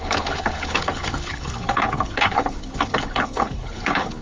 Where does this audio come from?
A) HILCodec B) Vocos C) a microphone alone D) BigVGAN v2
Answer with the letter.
A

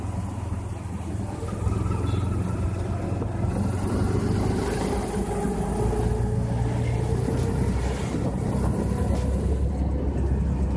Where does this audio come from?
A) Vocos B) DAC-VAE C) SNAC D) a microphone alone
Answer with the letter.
D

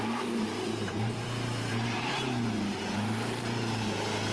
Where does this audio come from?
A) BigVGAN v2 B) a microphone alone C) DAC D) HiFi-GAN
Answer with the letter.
A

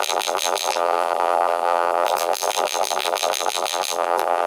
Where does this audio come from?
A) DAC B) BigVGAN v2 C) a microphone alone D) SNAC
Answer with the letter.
B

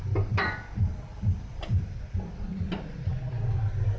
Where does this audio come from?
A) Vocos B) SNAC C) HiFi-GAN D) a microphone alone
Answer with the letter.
D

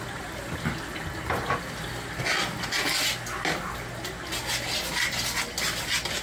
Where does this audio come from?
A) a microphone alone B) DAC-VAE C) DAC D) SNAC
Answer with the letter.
A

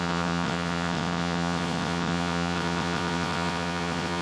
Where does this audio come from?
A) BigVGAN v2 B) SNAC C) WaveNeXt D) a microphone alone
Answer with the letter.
C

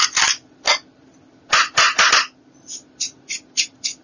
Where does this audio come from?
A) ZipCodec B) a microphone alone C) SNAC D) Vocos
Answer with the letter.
B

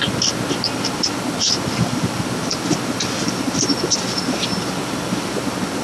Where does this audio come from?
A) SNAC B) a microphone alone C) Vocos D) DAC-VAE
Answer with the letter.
B